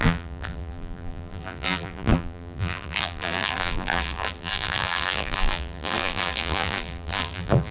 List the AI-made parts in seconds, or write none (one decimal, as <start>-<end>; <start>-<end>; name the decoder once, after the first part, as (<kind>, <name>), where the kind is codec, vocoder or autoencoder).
0.0-7.7 (vocoder, BigVGAN v2)